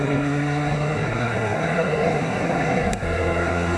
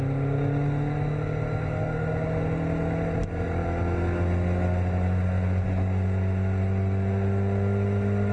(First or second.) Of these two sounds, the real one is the second